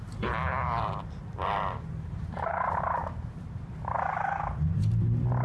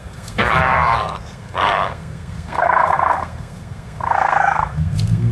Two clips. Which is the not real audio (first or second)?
second